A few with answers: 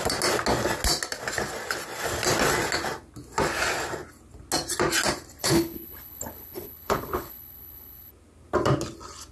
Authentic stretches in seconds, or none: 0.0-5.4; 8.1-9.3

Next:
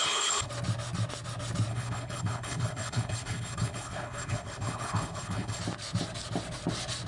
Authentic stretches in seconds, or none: 0.5-1.7; 5.6-7.1

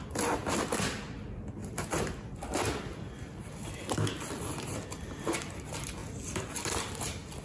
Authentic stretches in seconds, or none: 0.0-7.4